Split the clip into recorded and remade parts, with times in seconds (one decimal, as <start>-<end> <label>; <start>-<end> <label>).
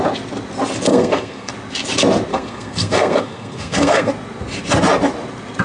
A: 0.0-0.9 recorded; 0.9-1.5 remade; 1.5-2.3 recorded; 2.3-4.1 remade; 4.1-5.6 recorded